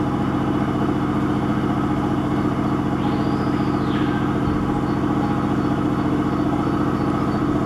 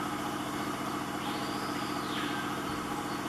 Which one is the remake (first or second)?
second